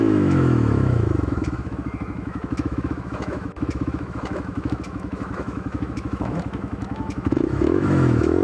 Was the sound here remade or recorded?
remade